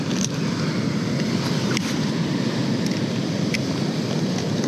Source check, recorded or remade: remade